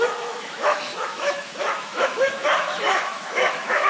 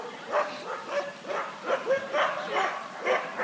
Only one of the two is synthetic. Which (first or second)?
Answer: first